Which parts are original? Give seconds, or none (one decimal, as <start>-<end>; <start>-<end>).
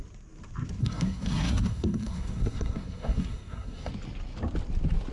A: 0.0-0.8; 3.9-5.1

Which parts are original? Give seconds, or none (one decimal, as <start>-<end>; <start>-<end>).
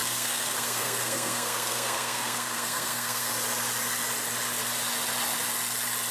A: 3.3-6.1